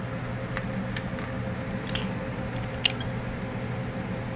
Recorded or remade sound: recorded